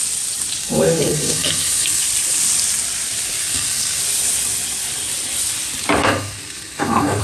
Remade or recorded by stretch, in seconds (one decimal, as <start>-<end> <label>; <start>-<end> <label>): 0.0-0.6 recorded; 0.6-2.0 remade; 2.0-3.4 recorded; 3.4-4.0 remade; 4.0-6.0 recorded; 6.0-7.2 remade